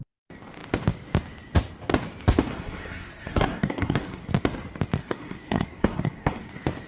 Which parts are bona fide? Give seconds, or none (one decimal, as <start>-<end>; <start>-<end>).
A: 0.0-2.5; 4.3-5.0; 6.5-6.9